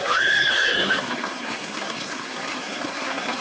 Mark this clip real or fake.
fake